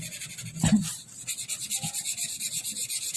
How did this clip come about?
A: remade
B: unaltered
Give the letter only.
B